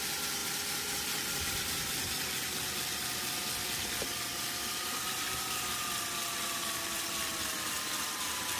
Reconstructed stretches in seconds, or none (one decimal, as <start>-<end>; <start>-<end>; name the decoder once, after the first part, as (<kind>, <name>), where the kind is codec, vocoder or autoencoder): none